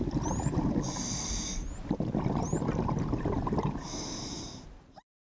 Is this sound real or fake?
real